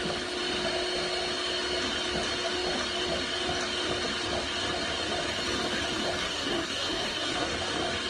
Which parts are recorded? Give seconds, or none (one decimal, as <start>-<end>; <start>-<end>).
0.0-6.2; 7.5-8.1